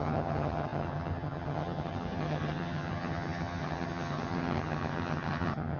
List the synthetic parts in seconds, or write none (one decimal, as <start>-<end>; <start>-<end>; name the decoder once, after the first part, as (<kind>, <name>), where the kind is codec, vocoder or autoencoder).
0.0-5.8 (vocoder, HiFi-GAN)